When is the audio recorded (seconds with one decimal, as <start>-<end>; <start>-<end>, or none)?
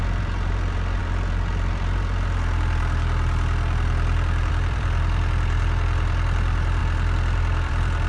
none